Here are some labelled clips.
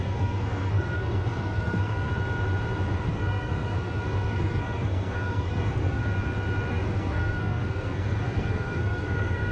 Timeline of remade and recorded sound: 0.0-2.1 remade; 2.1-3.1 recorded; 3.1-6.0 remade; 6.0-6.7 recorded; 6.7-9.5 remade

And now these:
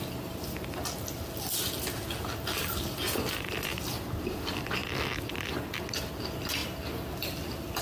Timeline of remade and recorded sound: 0.0-7.8 recorded

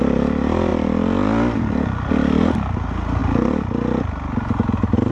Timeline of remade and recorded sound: 0.0-5.1 recorded

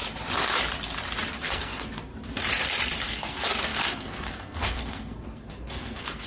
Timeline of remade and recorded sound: 0.0-1.4 recorded; 1.4-2.1 remade; 2.1-3.1 recorded; 3.1-6.3 remade

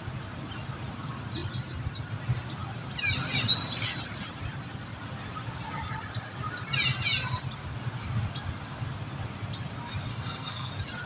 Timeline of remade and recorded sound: 0.0-10.1 recorded; 10.1-10.7 remade; 10.7-11.1 recorded

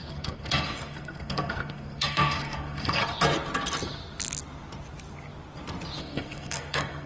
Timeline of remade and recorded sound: 0.0-3.0 remade; 3.0-6.0 recorded; 6.0-7.1 remade